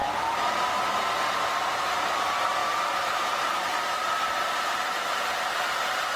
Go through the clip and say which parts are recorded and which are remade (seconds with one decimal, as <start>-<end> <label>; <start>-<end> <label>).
0.0-2.6 recorded; 2.6-5.7 remade; 5.7-6.2 recorded